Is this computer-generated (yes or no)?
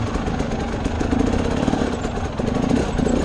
no